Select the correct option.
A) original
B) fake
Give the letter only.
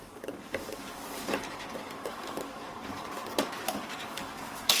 B